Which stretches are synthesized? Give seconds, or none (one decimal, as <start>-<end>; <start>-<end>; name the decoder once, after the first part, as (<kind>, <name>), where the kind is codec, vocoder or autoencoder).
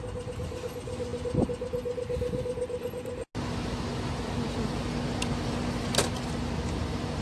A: none